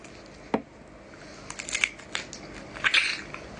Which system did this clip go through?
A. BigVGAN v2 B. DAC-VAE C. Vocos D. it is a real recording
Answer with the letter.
D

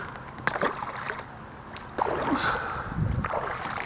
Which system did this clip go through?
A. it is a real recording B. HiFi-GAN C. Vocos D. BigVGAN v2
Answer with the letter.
A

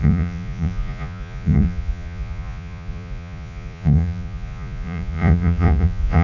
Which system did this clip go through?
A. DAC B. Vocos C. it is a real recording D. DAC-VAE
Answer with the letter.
B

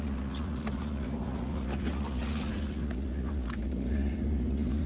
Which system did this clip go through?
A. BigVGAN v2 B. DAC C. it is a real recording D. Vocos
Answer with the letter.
D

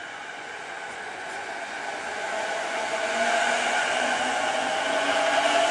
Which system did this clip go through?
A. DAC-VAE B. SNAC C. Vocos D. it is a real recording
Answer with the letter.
C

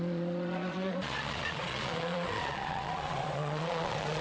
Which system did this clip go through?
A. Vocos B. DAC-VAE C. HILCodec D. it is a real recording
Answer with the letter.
A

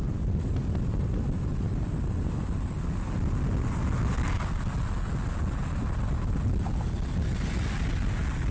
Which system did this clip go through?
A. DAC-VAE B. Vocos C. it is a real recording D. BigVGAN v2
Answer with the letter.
C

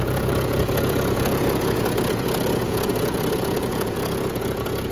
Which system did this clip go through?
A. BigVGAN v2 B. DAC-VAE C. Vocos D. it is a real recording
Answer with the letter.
C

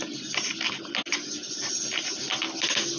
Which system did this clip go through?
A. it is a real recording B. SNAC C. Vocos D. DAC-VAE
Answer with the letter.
A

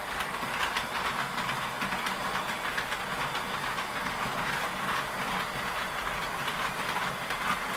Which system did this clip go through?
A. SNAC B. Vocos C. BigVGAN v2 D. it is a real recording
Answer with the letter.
D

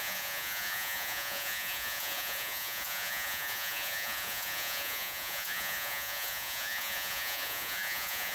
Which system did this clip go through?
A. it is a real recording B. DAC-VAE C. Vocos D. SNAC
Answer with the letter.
C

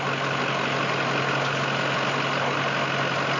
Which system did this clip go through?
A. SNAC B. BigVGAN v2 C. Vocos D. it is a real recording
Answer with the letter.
D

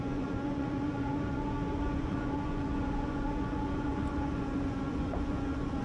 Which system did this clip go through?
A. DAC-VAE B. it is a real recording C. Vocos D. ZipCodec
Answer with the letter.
C